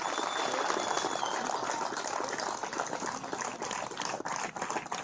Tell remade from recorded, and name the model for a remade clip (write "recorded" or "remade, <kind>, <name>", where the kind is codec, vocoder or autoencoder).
recorded